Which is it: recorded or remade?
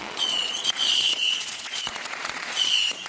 remade